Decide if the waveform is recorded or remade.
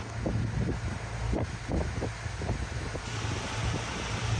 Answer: recorded